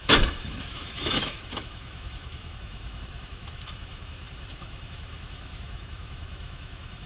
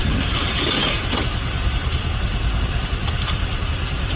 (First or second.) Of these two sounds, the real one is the second